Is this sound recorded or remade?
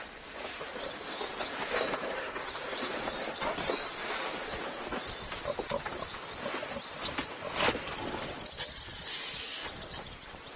recorded